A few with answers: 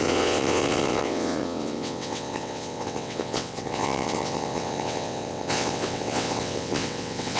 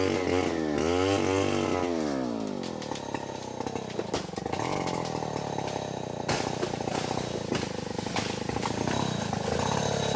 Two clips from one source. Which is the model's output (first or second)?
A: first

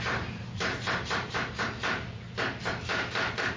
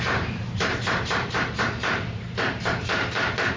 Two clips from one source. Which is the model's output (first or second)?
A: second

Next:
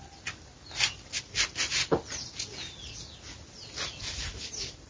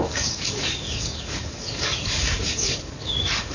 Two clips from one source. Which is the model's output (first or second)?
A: second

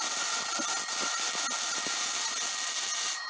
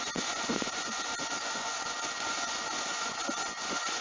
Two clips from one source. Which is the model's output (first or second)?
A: second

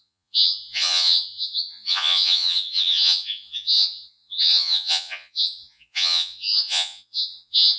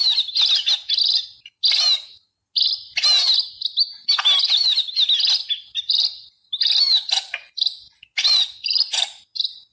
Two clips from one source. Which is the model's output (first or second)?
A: first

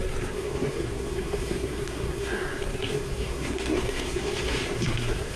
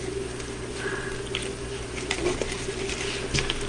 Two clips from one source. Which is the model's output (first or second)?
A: first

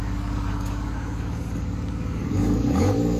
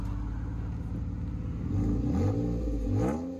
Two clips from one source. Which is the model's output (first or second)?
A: first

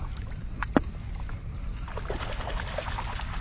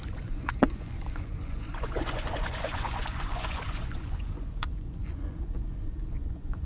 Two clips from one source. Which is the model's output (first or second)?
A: second